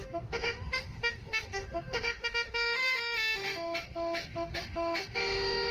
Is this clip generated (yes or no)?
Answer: yes